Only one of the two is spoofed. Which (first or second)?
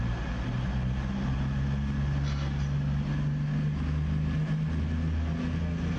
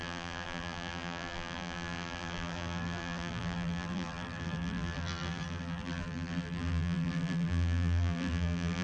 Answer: second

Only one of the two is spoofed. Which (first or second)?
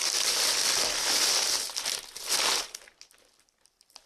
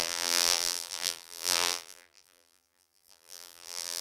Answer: second